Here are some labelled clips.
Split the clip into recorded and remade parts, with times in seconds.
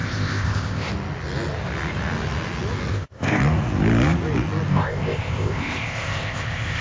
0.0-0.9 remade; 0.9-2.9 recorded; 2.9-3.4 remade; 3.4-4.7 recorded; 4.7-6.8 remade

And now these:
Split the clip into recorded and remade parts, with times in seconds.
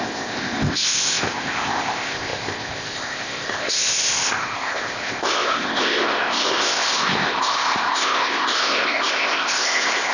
0.0-10.1 remade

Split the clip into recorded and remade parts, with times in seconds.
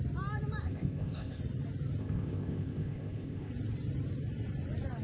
0.0-0.6 recorded; 0.6-1.4 remade; 1.4-2.0 recorded; 2.0-3.5 remade; 3.5-5.0 recorded